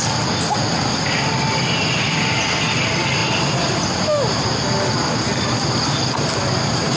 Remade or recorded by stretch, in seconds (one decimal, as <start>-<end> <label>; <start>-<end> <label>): 0.0-7.0 recorded